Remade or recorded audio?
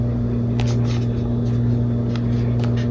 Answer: recorded